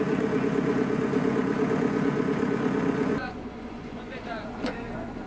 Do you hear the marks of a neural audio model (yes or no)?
yes